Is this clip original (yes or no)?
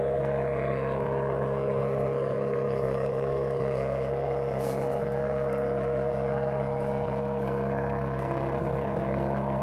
no